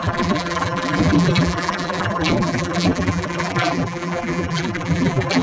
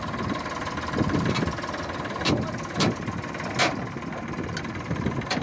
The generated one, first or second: first